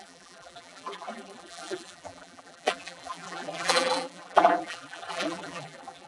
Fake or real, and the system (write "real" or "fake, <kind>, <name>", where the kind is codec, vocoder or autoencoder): fake, vocoder, BigVGAN v2